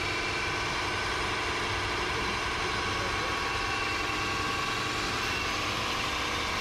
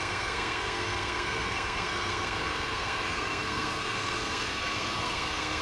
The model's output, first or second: second